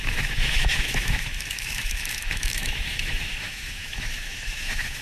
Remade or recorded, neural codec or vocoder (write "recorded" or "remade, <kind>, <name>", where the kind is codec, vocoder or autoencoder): remade, autoencoder, DAC-VAE